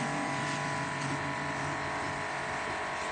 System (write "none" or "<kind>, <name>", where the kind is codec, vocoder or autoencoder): vocoder, BigVGAN v2